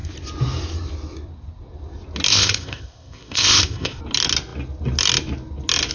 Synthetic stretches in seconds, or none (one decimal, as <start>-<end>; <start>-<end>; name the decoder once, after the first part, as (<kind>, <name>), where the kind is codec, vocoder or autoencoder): 2.3-4.0 (codec, ZipCodec)